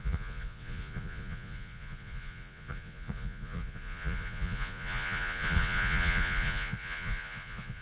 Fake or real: fake